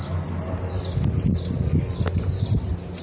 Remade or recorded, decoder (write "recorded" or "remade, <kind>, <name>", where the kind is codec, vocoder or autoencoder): recorded